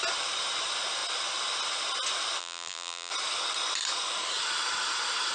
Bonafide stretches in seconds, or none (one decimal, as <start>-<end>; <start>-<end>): 0.0-2.4; 3.1-5.3